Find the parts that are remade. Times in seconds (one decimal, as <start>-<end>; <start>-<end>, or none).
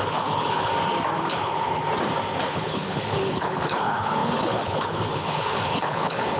0.0-0.7; 1.3-1.8; 2.4-6.4